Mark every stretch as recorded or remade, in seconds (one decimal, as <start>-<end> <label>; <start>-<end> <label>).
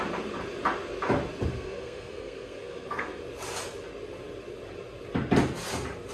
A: 0.0-1.5 recorded; 1.5-3.2 remade; 3.2-6.1 recorded